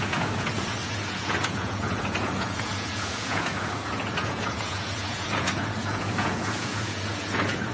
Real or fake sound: fake